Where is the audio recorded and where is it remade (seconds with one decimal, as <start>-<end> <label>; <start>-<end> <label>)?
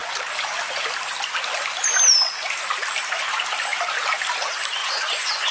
0.0-4.8 recorded; 4.8-5.5 remade